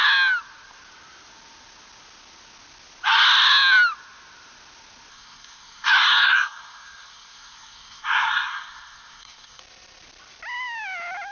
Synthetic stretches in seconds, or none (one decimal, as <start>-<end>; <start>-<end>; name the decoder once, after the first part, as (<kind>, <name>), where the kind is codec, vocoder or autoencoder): 5.1-9.6 (codec, SNAC)